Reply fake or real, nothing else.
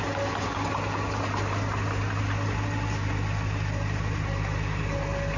real